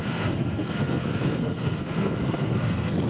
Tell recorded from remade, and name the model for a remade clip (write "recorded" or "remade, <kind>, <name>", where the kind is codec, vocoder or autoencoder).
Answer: remade, codec, SNAC